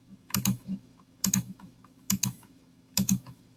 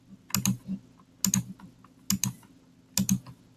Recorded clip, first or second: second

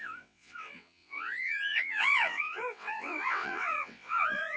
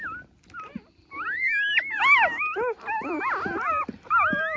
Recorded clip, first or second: second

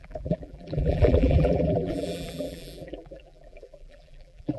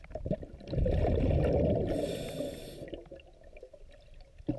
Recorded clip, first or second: second